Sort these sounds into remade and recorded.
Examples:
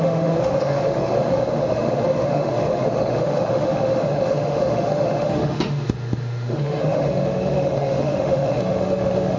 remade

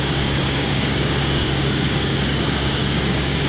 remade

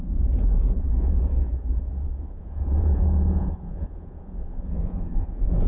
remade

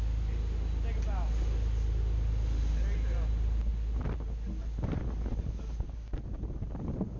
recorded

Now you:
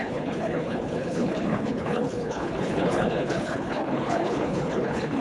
remade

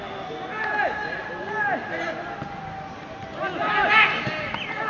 recorded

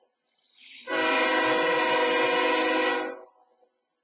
recorded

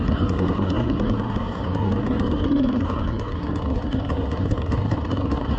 remade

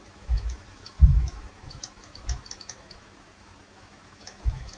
remade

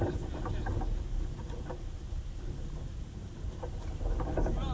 recorded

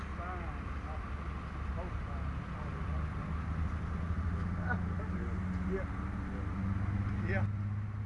recorded